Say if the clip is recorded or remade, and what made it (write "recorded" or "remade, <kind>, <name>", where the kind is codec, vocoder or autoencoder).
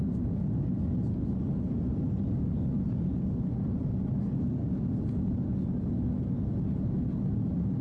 recorded